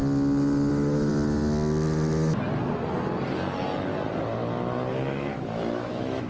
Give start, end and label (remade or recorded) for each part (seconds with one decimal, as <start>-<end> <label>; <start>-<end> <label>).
0.0-0.7 recorded; 0.7-1.1 remade; 1.1-4.9 recorded; 4.9-6.3 remade